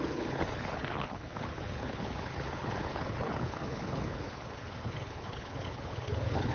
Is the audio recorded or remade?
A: remade